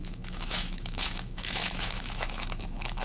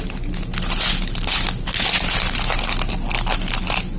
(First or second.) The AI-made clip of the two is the first